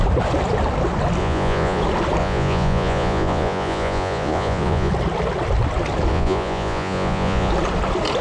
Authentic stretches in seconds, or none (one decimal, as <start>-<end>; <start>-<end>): 0.0-1.2; 1.8-2.2; 4.9-6.1; 7.5-8.2